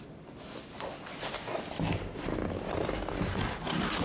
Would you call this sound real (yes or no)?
yes